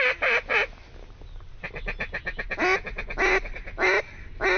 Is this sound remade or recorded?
recorded